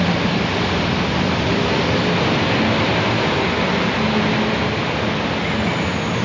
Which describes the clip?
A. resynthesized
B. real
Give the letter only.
B